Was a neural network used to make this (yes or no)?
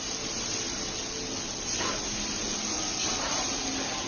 no